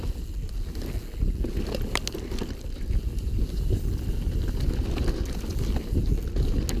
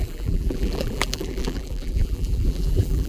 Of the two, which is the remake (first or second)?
second